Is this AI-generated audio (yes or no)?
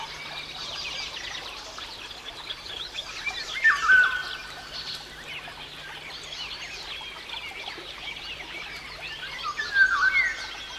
no